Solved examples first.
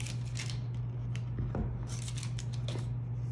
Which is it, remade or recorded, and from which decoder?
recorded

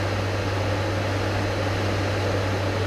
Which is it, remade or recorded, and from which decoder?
recorded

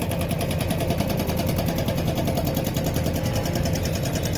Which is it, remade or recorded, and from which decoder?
recorded